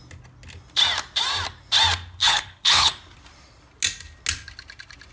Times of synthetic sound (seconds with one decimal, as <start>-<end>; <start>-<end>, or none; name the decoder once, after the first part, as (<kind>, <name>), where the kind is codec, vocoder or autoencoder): 2.2-2.9 (codec, HILCodec)